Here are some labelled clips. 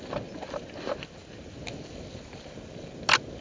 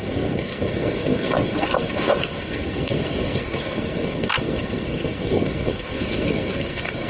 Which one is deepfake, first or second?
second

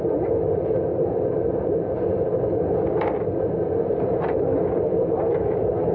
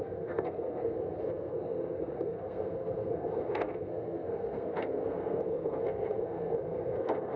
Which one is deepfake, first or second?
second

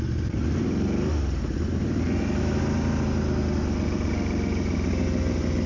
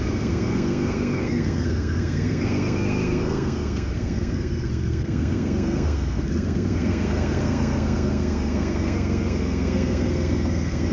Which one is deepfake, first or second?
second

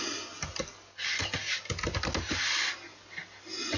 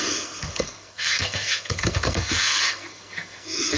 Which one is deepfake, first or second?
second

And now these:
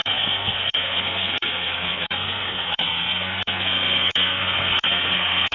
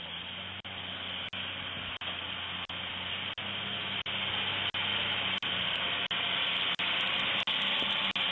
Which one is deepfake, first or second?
first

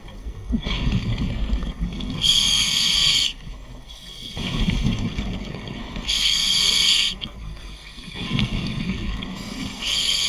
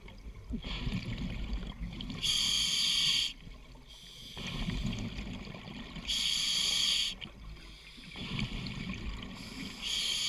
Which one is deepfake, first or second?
first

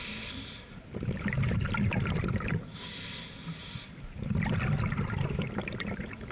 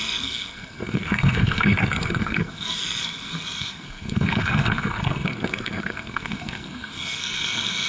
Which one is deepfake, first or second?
second